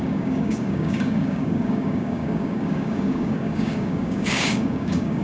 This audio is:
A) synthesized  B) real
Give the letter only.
A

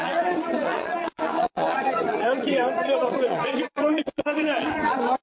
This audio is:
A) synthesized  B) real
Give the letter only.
A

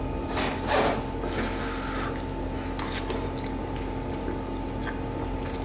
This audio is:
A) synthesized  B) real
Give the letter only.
B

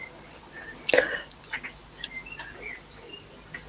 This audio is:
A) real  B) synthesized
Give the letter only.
A